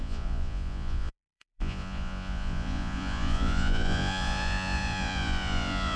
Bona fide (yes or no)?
no